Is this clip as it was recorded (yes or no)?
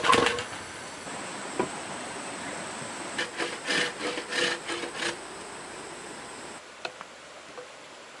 yes